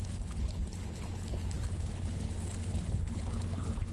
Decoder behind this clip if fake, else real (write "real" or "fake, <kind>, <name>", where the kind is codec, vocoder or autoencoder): fake, codec, HILCodec